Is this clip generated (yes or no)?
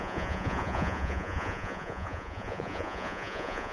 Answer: yes